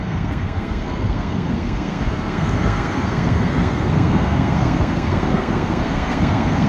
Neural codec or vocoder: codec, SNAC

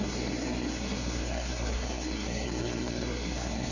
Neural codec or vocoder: codec, SNAC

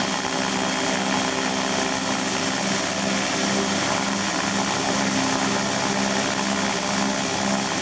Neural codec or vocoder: none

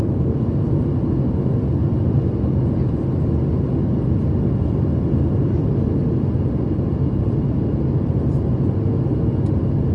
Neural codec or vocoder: none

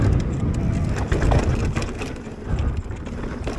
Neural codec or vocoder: none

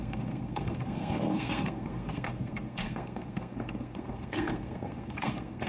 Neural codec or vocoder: codec, SNAC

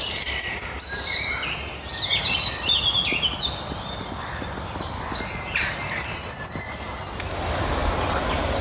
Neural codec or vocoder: none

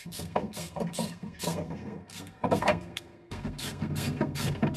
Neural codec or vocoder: codec, SNAC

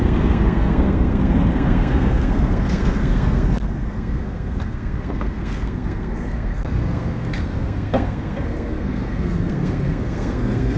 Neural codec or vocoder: codec, SNAC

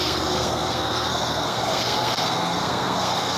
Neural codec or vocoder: codec, SNAC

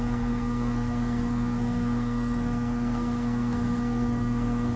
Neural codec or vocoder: codec, SNAC